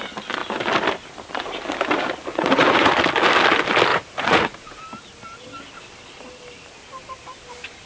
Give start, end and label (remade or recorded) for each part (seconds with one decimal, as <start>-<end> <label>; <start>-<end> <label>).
0.0-2.3 recorded; 2.3-2.9 remade; 2.9-3.9 recorded; 3.9-4.8 remade; 4.8-7.9 recorded